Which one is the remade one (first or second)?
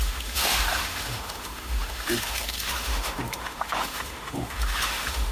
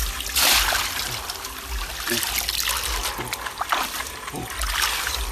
first